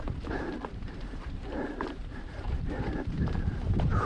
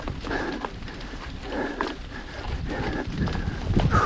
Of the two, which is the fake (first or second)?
first